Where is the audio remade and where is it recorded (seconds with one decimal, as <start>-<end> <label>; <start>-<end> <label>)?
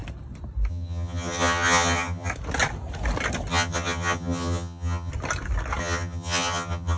0.0-0.7 recorded; 0.7-2.3 remade; 2.3-3.5 recorded; 3.5-5.1 remade; 5.1-5.8 recorded; 5.8-7.0 remade